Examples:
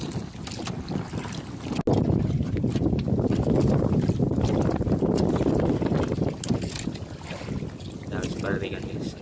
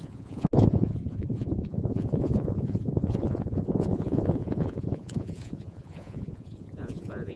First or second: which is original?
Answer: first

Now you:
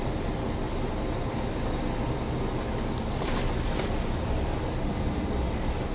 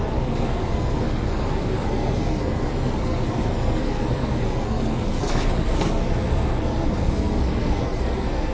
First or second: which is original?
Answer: first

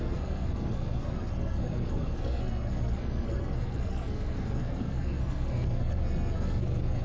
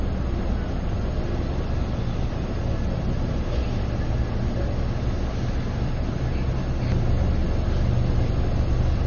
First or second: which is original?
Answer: second